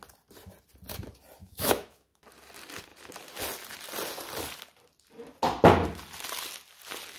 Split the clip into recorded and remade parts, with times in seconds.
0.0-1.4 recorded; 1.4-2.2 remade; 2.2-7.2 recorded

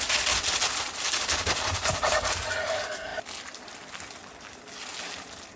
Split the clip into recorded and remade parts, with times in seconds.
0.0-5.6 recorded

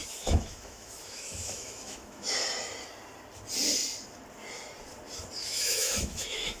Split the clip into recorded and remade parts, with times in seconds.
0.0-2.3 remade; 2.3-5.4 recorded; 5.4-6.6 remade